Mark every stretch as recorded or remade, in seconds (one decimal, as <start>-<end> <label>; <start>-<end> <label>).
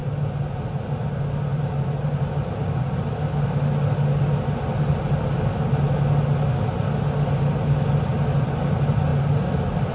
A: 0.0-1.5 recorded; 1.5-2.3 remade; 2.3-9.1 recorded; 9.1-9.9 remade